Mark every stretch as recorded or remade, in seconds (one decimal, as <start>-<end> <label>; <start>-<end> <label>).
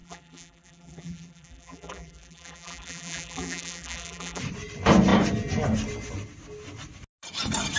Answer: 0.0-4.4 remade; 4.4-7.8 recorded